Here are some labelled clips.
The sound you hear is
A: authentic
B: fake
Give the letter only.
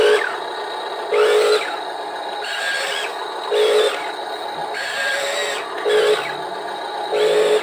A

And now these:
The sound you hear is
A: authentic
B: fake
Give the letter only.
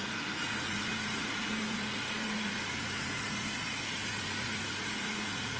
B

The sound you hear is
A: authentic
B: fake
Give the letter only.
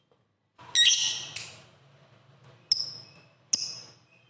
A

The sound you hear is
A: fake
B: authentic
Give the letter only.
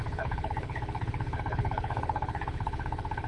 A